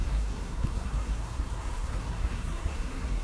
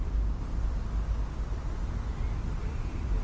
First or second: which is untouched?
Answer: second